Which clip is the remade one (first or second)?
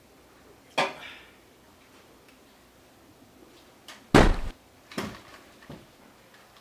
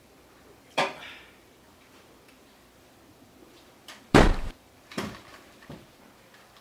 second